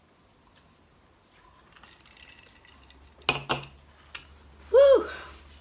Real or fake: real